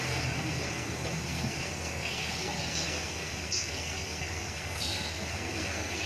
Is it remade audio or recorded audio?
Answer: remade